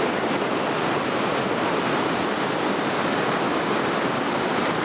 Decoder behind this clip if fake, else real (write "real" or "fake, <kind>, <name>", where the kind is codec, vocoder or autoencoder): real